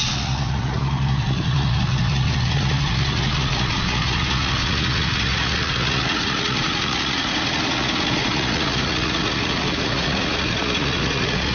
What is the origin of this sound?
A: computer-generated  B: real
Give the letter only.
A